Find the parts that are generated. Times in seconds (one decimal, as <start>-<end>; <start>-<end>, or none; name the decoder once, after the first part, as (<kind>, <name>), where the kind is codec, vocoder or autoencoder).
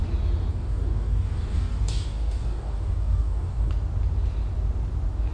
0.5-3.7 (codec, DAC)